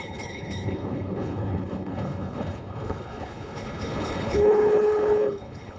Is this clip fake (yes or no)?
yes